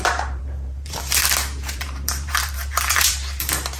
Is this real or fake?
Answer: fake